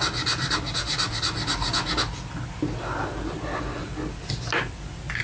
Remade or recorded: recorded